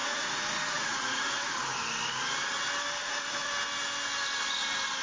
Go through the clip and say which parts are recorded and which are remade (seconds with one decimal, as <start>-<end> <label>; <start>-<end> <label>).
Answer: 0.0-1.5 remade; 1.5-3.0 recorded; 3.0-3.5 remade; 3.5-5.0 recorded